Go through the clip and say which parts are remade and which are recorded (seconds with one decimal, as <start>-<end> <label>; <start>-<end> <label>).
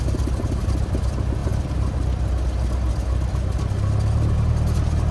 0.0-5.1 recorded